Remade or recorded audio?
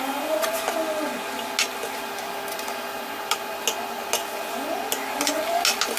recorded